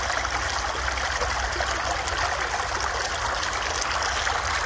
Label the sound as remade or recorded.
recorded